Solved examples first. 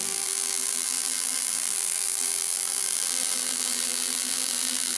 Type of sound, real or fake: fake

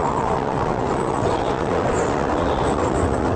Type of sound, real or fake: fake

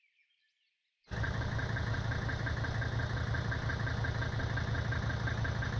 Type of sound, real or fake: real